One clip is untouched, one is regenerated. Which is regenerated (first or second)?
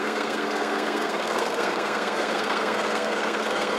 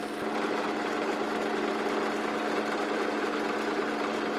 first